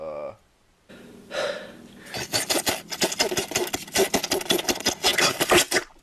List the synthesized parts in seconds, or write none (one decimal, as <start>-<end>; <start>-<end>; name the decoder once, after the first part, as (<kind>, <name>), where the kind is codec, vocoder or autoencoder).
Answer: none